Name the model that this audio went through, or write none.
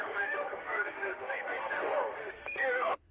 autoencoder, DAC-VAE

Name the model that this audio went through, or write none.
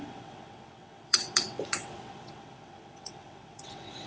vocoder, WaveNeXt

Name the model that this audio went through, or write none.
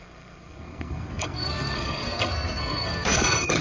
codec, SNAC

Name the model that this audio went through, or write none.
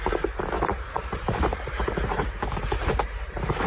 vocoder, BigVGAN v2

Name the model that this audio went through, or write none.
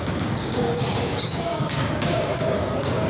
codec, DAC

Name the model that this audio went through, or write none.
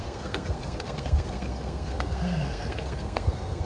codec, SNAC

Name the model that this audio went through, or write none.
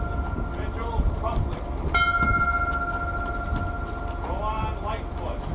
none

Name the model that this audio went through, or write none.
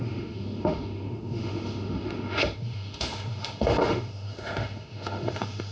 autoencoder, DAC-VAE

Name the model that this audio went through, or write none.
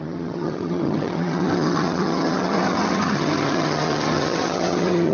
vocoder, HiFi-GAN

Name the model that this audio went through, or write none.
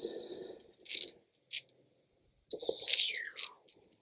none